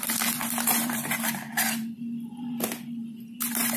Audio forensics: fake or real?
fake